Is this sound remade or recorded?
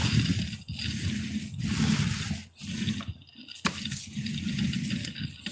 recorded